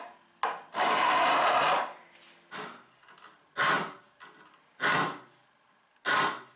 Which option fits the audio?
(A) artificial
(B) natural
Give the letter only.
B